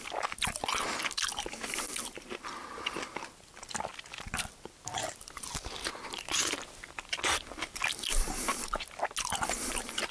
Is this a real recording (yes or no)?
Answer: yes